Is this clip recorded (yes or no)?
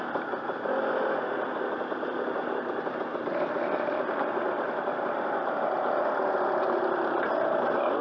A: yes